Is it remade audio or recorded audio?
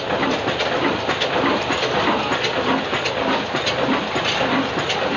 recorded